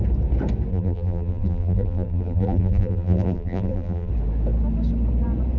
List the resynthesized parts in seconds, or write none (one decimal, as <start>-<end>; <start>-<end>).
0.7-4.1